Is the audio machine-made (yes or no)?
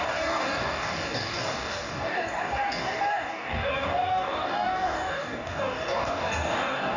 yes